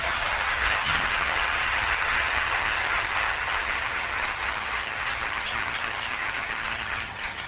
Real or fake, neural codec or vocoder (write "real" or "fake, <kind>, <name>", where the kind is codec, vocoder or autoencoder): fake, vocoder, HiFi-GAN